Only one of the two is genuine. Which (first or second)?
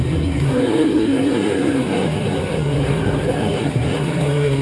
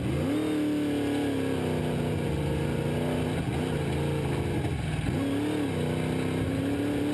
second